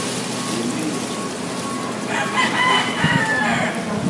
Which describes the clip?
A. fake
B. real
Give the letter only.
B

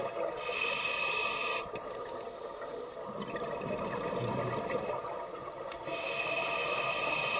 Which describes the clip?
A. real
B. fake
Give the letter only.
A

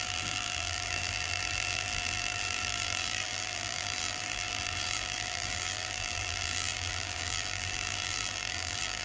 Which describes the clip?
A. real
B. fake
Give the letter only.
B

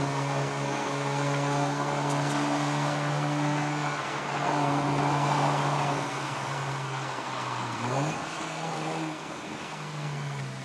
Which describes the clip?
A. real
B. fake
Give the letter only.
B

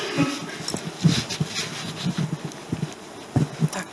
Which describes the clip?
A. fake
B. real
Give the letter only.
B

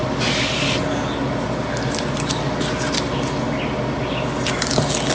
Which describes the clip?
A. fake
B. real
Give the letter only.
B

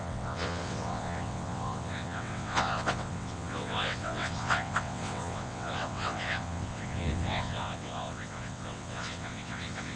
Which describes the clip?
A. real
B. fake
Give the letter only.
B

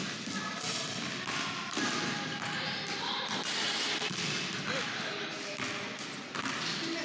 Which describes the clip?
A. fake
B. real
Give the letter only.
B